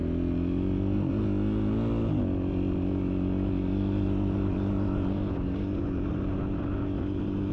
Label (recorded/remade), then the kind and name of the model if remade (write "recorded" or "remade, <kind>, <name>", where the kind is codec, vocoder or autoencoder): recorded